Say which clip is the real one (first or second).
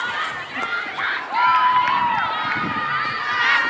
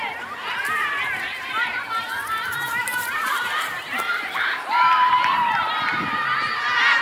first